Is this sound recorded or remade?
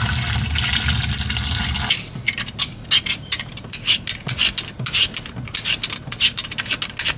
recorded